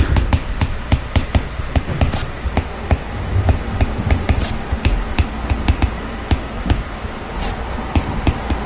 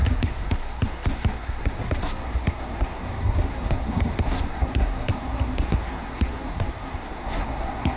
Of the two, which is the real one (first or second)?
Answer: first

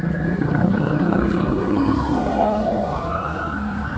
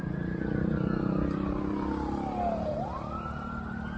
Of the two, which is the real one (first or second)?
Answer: second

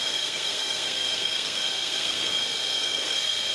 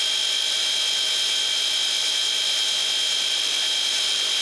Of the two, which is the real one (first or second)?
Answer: second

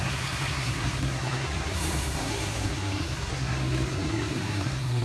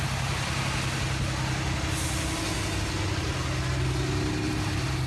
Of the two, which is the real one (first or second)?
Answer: second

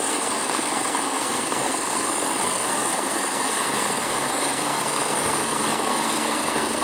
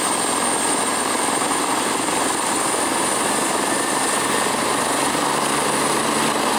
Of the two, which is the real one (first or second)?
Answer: second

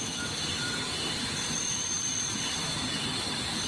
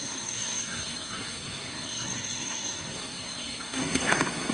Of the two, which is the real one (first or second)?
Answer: first